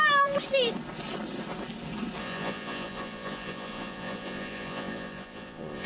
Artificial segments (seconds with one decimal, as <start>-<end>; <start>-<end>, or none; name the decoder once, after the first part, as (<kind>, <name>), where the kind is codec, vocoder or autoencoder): 2.2-5.9 (vocoder, Vocos)